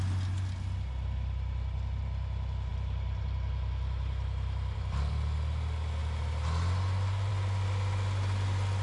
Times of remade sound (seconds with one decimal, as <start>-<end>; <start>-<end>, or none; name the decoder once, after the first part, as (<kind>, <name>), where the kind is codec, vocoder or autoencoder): 2.7-5.1 (vocoder, BigVGAN v2); 6.0-7.3